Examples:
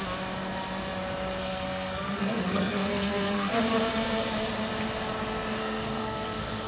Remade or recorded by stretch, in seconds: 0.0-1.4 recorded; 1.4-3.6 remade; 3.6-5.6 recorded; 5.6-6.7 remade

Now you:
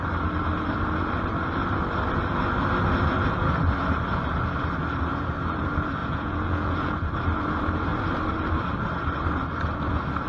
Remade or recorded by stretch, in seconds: 0.0-6.0 recorded; 6.0-6.9 remade; 6.9-10.3 recorded

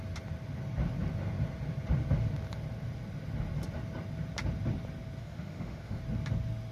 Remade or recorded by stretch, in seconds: 0.0-5.2 recorded; 5.2-6.0 remade; 6.0-6.7 recorded

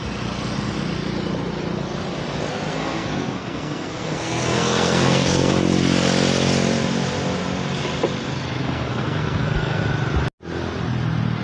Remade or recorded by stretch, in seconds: 0.0-2.5 recorded; 2.5-5.5 remade; 5.5-8.6 recorded; 8.6-9.8 remade; 9.8-11.4 recorded

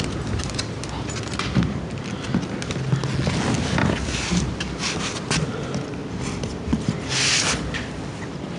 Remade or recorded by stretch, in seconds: 0.0-8.6 recorded

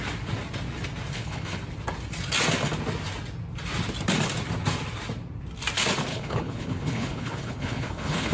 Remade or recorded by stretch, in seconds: 0.0-1.1 recorded; 1.1-1.6 remade; 1.6-6.1 recorded; 6.1-8.3 remade

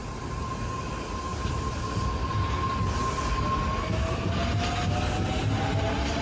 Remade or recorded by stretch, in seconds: 0.0-1.3 recorded; 1.3-3.1 remade; 3.1-6.2 recorded